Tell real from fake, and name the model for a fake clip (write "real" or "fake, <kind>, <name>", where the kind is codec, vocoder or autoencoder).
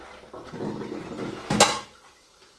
real